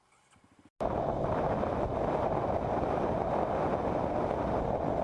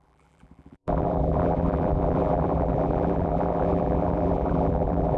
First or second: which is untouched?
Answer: first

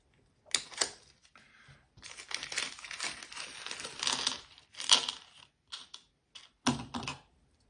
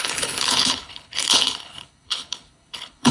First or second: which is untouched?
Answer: first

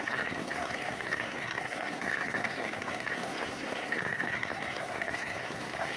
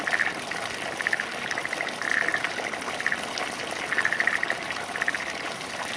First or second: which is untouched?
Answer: second